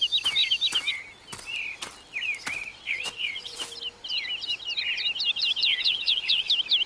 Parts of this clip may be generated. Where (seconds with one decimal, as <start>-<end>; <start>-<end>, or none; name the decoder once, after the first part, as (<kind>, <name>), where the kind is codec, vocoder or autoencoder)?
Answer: 2.7-3.6 (vocoder, WaveNeXt); 5.7-6.5